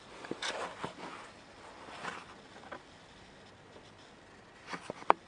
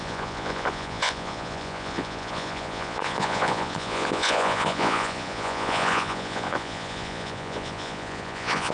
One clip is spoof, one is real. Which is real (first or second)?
first